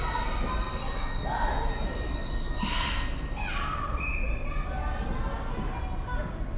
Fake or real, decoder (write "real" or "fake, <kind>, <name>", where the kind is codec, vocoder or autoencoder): real